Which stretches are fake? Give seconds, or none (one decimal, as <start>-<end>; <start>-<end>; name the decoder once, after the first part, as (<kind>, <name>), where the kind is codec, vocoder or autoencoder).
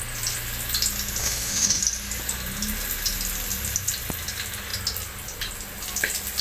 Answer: 1.2-1.8 (autoencoder, DAC-VAE)